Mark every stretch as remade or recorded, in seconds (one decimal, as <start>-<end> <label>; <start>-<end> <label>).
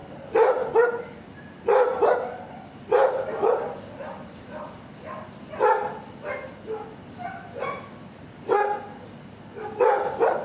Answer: 0.0-10.4 recorded